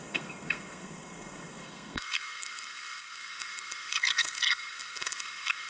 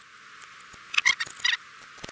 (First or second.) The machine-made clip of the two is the first